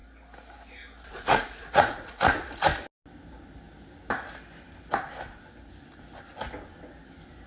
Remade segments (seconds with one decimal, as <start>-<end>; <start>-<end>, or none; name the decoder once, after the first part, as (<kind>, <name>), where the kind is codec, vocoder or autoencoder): 1.1-2.7 (vocoder, Vocos)